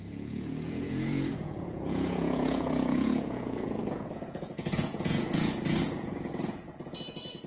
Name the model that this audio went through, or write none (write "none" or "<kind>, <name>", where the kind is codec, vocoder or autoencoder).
vocoder, Vocos